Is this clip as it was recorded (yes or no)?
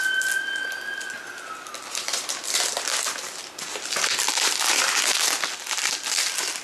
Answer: yes